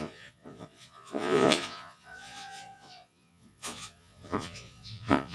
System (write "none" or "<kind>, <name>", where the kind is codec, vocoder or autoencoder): vocoder, Vocos